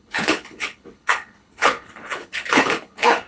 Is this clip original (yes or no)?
no